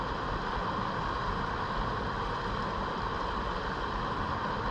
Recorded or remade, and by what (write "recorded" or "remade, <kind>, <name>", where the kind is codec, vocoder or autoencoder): recorded